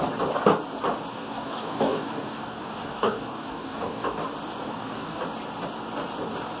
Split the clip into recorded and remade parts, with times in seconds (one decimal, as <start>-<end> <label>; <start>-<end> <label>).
0.0-1.1 recorded; 1.1-4.2 remade; 4.2-4.7 recorded; 4.7-5.2 remade; 5.2-6.6 recorded

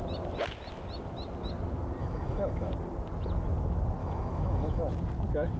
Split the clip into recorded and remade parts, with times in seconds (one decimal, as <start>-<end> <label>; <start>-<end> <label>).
0.0-2.0 recorded; 2.0-2.7 remade; 2.7-4.0 recorded; 4.0-4.8 remade; 4.8-5.6 recorded

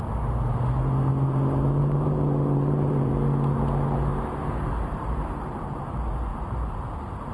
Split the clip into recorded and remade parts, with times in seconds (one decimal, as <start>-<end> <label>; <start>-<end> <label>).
0.0-1.8 recorded; 1.8-3.1 remade; 3.1-4.1 recorded; 4.1-5.8 remade; 5.8-6.3 recorded; 6.3-7.3 remade

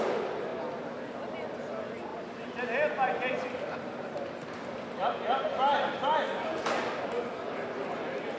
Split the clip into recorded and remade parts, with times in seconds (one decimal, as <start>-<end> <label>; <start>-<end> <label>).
0.0-8.4 recorded